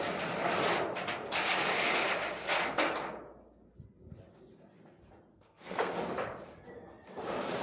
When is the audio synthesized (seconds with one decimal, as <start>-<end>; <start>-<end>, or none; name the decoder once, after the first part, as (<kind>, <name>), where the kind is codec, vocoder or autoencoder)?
5.3-5.9 (codec, SNAC)